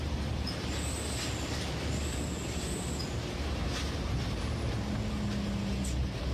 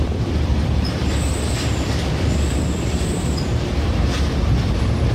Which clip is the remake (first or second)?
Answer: second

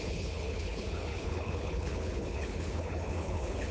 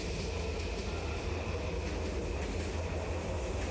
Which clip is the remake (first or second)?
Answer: first